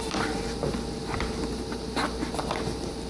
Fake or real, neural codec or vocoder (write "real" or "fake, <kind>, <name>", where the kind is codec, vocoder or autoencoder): fake, vocoder, BigVGAN v2